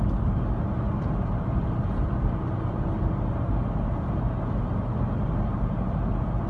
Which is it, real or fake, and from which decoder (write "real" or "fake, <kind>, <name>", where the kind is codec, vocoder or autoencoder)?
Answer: real